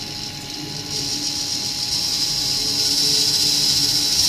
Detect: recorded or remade recorded